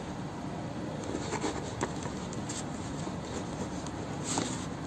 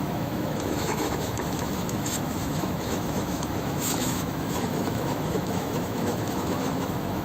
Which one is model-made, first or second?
second